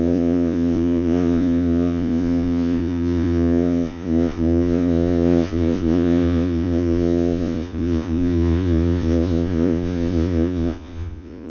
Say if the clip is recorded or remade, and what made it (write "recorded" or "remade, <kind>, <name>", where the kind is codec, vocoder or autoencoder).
remade, vocoder, Vocos